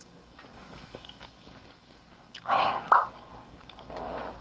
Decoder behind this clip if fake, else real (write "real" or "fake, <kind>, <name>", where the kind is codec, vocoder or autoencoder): fake, codec, DAC